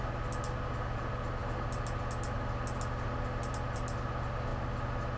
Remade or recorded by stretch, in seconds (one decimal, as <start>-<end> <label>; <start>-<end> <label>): 0.0-5.2 recorded